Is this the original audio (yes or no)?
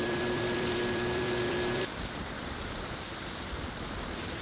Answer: no